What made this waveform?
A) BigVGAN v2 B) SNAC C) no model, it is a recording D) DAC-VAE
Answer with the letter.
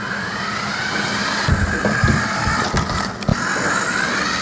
C